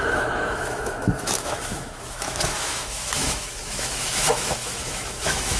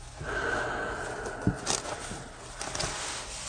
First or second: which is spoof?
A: first